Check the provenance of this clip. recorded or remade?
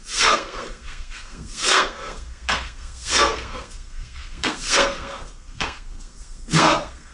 remade